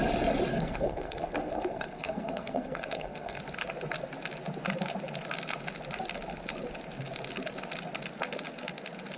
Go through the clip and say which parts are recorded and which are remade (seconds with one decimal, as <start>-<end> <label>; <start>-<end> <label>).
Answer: 0.0-0.5 recorded; 0.5-3.4 remade; 3.4-9.2 recorded